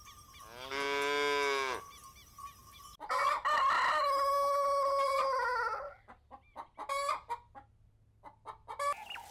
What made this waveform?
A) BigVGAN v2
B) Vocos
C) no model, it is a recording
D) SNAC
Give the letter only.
C